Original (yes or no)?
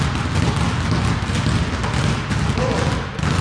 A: yes